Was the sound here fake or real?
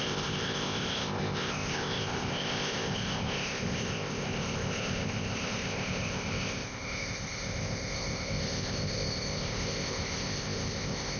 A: fake